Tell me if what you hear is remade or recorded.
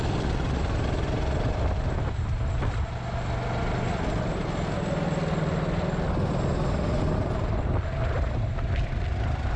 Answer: recorded